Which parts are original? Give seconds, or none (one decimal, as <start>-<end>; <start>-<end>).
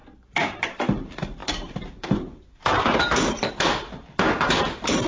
0.0-0.6